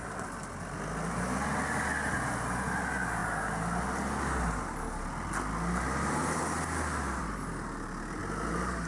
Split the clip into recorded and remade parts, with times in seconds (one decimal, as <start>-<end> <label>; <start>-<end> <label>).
0.0-8.9 recorded